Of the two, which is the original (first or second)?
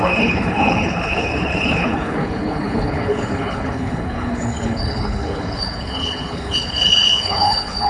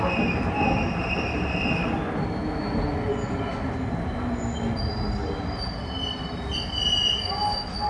second